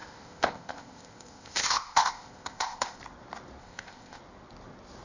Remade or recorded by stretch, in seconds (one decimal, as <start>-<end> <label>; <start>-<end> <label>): 0.0-3.0 remade; 3.0-3.6 recorded; 3.6-4.2 remade; 4.2-5.0 recorded